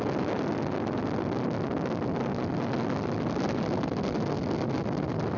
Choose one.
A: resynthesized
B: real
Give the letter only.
B